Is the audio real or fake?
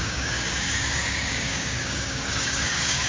fake